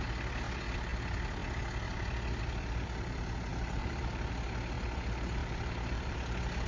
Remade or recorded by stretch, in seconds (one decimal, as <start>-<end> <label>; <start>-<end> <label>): 0.0-3.5 recorded; 3.5-4.3 remade; 4.3-5.4 recorded; 5.4-6.2 remade; 6.2-6.7 recorded